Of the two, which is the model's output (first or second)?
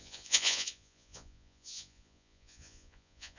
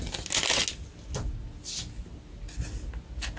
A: first